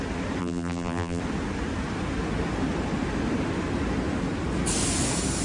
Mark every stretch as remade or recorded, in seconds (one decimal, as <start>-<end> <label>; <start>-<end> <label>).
0.0-0.4 recorded; 0.4-1.2 remade; 1.2-5.4 recorded